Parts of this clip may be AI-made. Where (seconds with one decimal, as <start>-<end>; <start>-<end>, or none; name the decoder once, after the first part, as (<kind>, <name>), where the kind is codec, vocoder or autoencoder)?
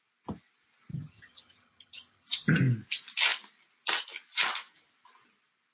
0.9-2.6 (vocoder, HiFi-GAN)